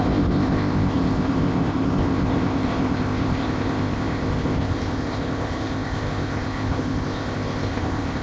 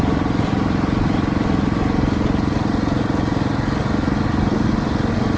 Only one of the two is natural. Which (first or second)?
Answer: second